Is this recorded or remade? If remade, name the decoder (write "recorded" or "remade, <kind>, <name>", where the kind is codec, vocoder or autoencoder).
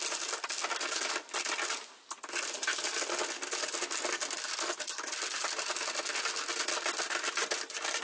recorded